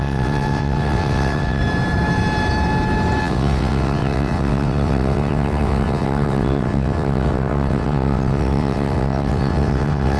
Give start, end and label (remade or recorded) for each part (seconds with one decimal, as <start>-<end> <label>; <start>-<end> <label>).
0.0-1.6 remade; 1.6-3.2 recorded; 3.2-10.2 remade